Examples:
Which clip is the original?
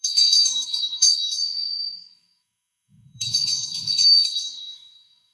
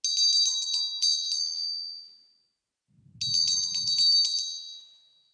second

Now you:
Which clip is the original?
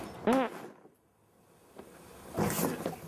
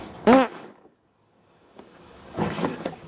first